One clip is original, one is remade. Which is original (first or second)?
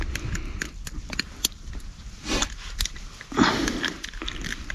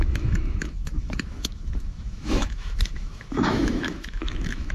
first